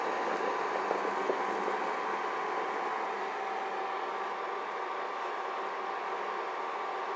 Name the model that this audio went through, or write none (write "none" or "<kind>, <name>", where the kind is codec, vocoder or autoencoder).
none